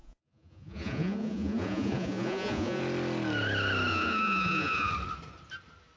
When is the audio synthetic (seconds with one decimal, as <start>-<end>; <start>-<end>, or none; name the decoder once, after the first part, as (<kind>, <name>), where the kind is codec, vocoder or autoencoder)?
0.0-2.8 (vocoder, Vocos); 3.9-4.9